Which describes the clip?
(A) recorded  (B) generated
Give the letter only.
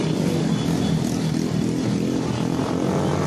A